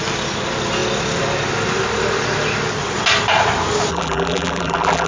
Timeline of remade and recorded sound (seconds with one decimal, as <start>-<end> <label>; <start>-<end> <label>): 0.0-3.9 recorded; 3.9-5.1 remade

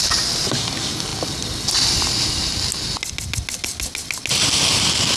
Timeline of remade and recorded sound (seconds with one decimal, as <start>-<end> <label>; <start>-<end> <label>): 0.0-5.2 recorded

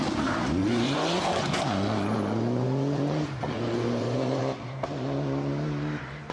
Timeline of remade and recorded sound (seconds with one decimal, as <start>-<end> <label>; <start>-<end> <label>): 0.0-0.6 recorded; 0.6-4.4 remade; 4.4-6.3 recorded

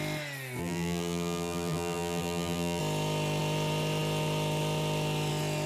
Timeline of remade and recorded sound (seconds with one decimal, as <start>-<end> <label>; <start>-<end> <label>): 0.0-0.6 recorded; 0.6-2.8 remade; 2.8-5.7 recorded